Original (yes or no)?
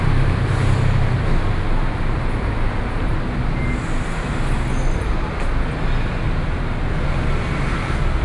yes